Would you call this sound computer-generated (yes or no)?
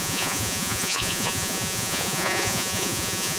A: yes